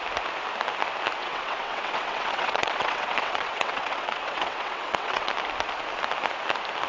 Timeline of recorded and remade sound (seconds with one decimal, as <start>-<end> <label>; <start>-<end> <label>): 0.0-1.2 recorded; 1.2-5.3 remade; 5.3-6.9 recorded